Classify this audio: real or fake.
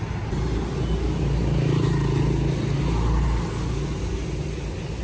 real